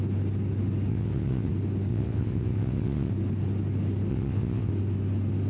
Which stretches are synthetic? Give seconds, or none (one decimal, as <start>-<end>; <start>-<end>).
0.9-1.5; 1.9-3.1; 4.1-4.7